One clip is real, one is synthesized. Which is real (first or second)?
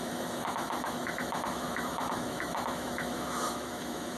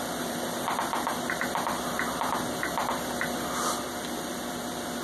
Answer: second